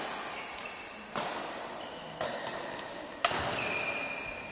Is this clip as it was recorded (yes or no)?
yes